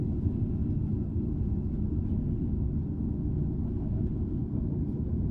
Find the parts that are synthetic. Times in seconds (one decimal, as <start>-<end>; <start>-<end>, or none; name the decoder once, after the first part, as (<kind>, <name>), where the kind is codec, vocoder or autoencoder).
0.0-0.6 (vocoder, BigVGAN v2); 3.8-5.3